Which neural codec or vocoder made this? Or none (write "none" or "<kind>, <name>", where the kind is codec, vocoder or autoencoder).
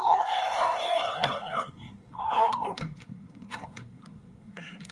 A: codec, SNAC